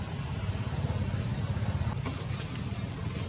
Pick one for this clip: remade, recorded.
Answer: recorded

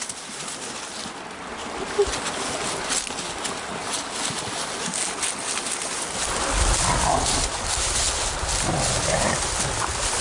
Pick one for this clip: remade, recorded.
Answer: recorded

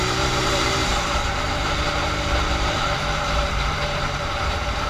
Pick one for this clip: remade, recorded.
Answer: remade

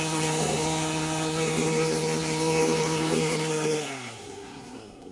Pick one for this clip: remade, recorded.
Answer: remade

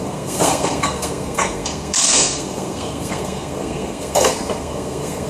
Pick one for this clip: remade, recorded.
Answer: remade